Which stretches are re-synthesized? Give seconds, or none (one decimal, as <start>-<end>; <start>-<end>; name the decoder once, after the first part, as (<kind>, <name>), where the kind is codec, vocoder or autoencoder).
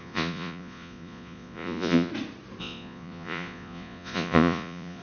0.0-2.1 (vocoder, Vocos); 2.6-5.0